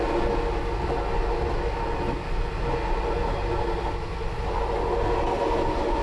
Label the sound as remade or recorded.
recorded